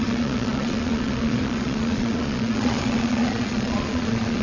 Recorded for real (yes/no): no